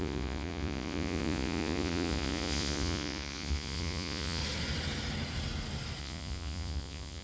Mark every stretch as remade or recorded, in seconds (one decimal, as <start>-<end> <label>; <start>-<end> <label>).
0.0-4.4 remade; 4.4-6.0 recorded; 6.0-7.2 remade